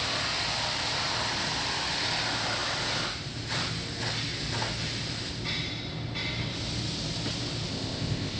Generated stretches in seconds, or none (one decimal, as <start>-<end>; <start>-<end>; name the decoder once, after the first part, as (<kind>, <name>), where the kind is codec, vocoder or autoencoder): 7.7-8.4 (codec, ZipCodec)